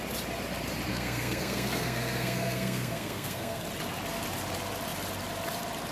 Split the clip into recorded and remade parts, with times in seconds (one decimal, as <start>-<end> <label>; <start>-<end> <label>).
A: 0.0-0.9 recorded; 0.9-3.6 remade; 3.6-5.9 recorded